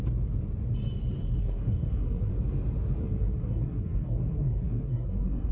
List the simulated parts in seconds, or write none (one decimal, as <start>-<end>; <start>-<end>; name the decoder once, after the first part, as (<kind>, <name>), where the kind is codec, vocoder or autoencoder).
1.4-2.3 (codec, SNAC); 3.0-5.5